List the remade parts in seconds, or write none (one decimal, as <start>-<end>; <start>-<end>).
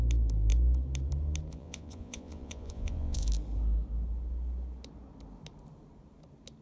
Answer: 1.5-3.3